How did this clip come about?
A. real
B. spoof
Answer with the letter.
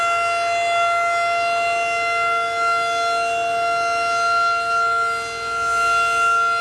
A